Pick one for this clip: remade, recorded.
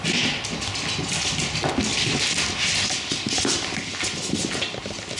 recorded